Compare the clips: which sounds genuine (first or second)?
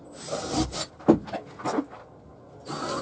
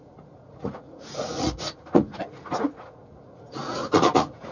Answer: first